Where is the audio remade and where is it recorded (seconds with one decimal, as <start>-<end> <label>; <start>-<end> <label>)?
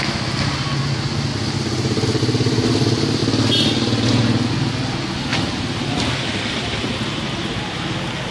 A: 0.0-1.3 recorded; 1.3-2.2 remade; 2.2-5.3 recorded; 5.3-7.3 remade; 7.3-8.3 recorded